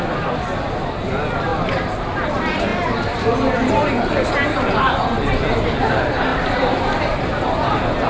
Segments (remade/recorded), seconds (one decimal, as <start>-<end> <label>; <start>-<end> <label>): 0.0-1.5 recorded; 1.5-2.3 remade; 2.3-6.3 recorded; 6.3-7.2 remade; 7.2-8.1 recorded